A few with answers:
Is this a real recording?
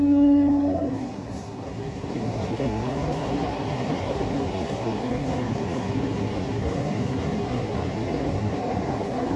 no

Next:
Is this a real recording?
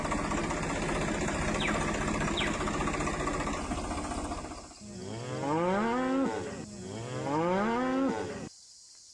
yes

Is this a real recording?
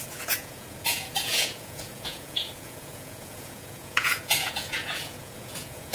no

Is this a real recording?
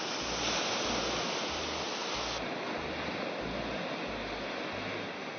yes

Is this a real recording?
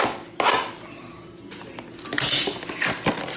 yes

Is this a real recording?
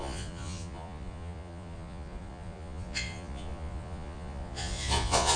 no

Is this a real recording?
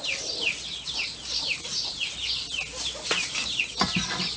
yes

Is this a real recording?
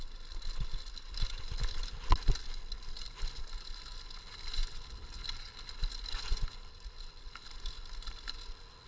yes